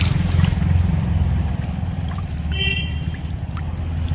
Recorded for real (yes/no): yes